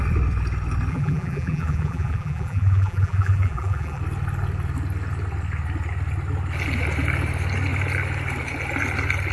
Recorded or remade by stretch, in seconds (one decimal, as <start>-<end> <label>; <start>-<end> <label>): 0.0-0.9 recorded; 0.9-4.0 remade; 4.0-9.3 recorded